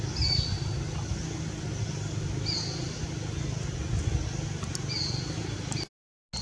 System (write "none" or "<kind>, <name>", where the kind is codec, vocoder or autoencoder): none